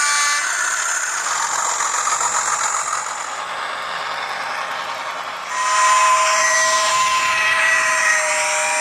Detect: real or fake real